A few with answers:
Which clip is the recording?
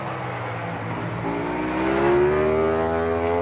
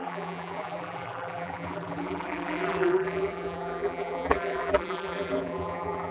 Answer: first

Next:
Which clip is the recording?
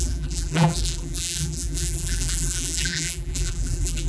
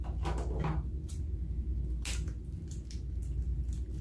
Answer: second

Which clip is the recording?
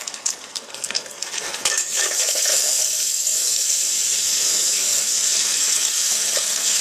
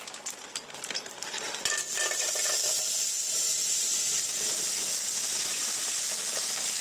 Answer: second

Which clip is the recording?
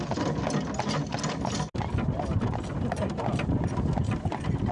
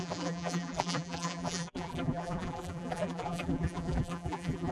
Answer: first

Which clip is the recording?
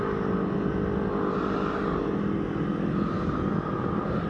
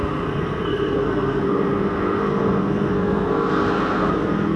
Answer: first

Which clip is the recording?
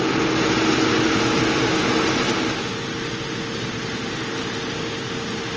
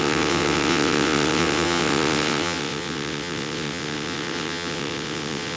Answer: first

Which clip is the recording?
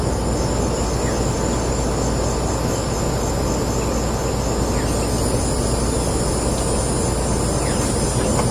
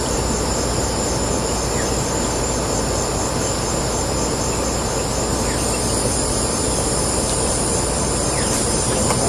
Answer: first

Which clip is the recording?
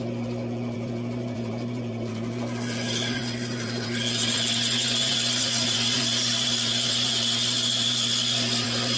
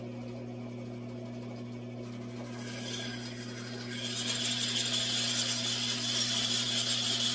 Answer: second